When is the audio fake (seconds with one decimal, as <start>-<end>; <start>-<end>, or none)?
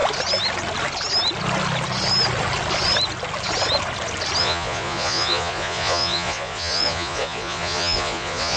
4.4-8.6